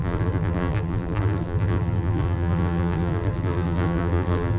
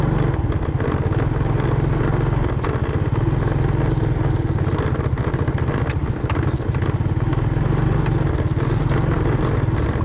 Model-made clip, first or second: first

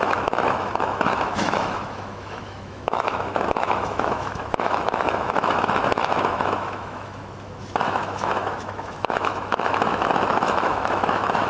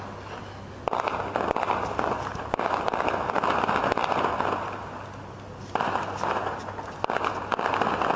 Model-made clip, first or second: first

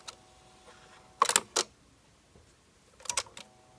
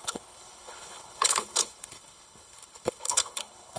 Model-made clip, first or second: second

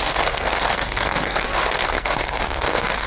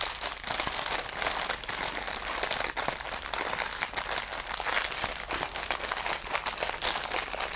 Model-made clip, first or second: first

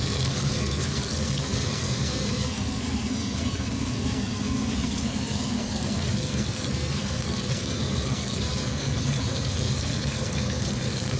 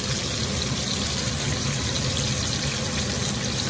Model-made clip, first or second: first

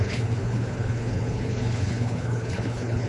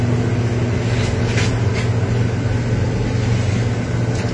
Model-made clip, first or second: first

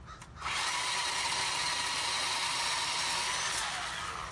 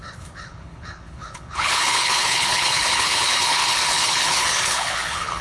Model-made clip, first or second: second